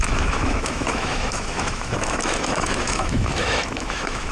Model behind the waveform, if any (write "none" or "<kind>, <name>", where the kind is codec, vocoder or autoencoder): autoencoder, DAC-VAE